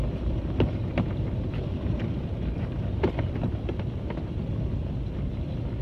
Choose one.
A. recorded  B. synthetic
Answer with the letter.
B